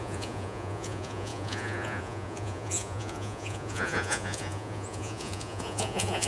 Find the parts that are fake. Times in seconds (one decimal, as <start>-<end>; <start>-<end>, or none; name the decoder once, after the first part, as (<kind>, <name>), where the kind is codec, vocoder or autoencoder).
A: 0.0-6.3 (vocoder, Vocos)